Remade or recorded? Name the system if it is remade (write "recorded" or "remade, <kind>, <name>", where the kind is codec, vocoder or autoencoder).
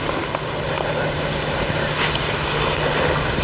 recorded